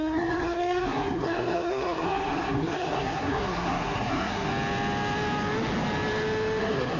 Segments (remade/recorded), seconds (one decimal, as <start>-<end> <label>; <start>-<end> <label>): 0.0-4.5 remade; 4.5-6.6 recorded; 6.6-7.0 remade